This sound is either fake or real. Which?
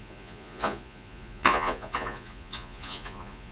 fake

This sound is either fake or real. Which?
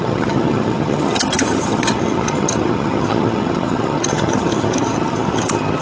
fake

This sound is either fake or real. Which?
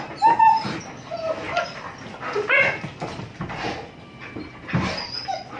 real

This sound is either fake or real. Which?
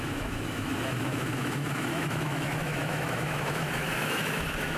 fake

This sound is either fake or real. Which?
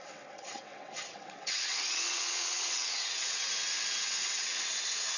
fake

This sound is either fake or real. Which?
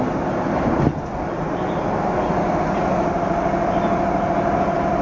real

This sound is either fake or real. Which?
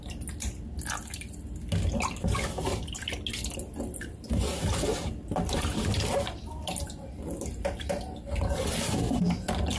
real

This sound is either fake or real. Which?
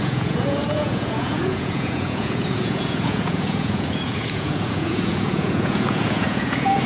fake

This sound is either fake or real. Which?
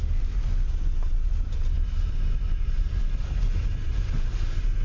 real